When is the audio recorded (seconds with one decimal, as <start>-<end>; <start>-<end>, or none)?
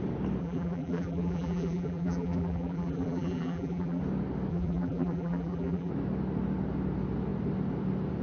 0.0-0.4; 4.0-4.5; 5.9-8.2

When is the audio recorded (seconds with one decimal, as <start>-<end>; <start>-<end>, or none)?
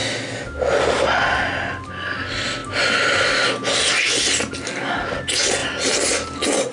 0.0-5.6; 6.1-6.7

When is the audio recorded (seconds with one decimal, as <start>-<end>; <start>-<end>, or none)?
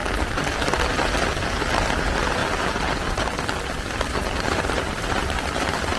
0.0-2.4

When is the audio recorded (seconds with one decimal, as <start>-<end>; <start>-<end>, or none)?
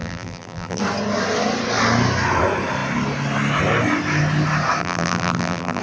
0.8-4.8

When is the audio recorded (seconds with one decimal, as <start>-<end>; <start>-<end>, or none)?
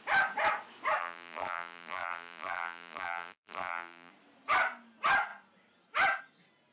0.0-1.0; 4.1-6.7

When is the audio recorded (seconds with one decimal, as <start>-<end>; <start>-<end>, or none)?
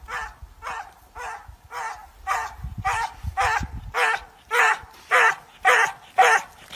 0.0-4.7; 5.3-6.8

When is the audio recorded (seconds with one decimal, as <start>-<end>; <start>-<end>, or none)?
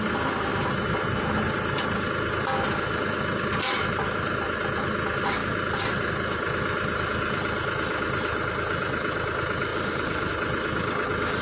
0.0-5.4; 6.1-9.7; 10.3-11.4